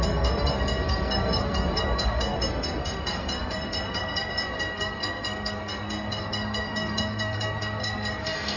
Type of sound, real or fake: fake